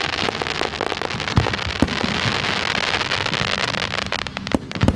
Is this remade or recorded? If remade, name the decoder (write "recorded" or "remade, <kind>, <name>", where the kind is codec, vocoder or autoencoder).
recorded